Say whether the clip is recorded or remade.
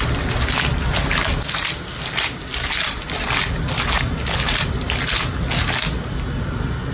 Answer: recorded